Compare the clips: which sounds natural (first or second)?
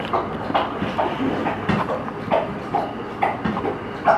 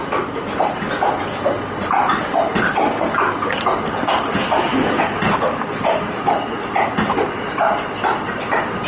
first